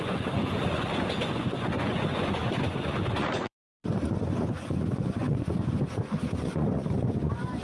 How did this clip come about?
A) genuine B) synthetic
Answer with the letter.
B